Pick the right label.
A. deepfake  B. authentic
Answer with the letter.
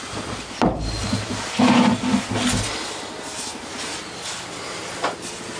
B